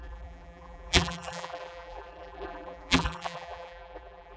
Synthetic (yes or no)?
yes